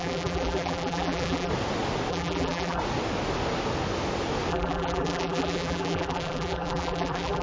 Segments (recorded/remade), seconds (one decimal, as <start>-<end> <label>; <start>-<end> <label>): 0.0-1.5 remade; 1.5-2.1 recorded; 2.1-2.8 remade; 2.8-4.5 recorded; 4.5-7.4 remade